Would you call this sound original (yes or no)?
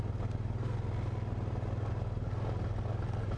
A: yes